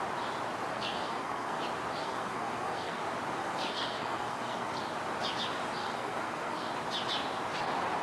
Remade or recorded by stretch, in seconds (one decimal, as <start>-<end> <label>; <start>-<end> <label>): 0.0-0.7 recorded; 0.7-1.6 remade; 1.6-2.0 recorded; 2.0-3.0 remade; 3.0-3.4 recorded; 3.4-4.8 remade; 4.8-5.8 recorded; 5.8-6.7 remade; 6.7-8.0 recorded